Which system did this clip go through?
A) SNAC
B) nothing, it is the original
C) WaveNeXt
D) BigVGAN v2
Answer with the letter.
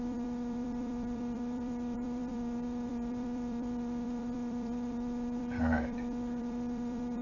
D